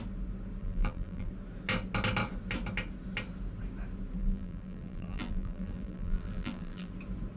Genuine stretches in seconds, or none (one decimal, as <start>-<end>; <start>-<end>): 0.0-0.6; 1.3-4.2; 6.9-7.4

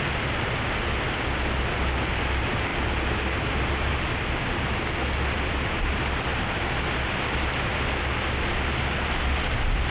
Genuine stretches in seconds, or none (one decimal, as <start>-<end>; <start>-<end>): 0.0-9.9

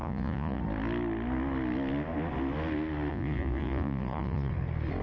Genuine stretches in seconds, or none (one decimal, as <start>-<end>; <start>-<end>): 0.6-3.1; 4.5-5.0

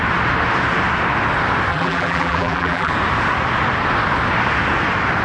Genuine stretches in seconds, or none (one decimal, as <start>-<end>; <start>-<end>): 0.0-1.7; 2.9-5.2

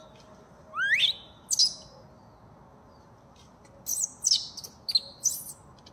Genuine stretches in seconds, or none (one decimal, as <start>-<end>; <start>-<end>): 0.0-5.9

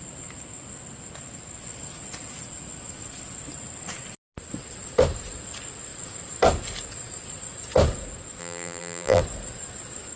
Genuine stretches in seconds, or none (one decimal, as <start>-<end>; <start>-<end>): 0.0-8.4; 9.2-10.2

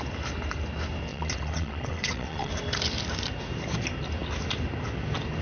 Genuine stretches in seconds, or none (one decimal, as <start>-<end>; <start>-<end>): 0.0-1.1; 2.5-5.4